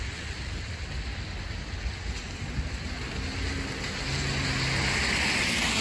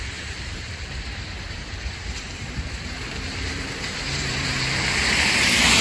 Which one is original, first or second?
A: first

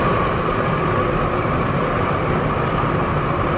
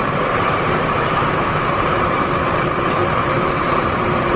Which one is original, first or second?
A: first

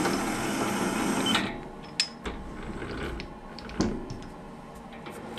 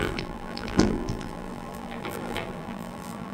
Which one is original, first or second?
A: first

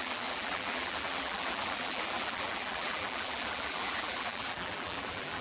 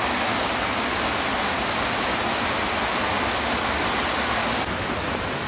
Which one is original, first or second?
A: second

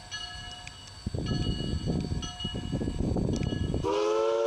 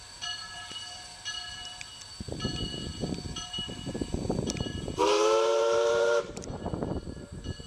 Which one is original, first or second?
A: first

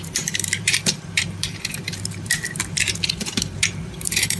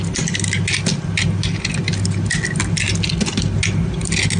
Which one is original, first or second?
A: second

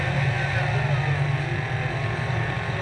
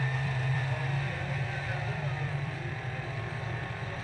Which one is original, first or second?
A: first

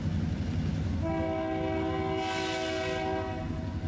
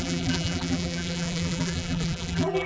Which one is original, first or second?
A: first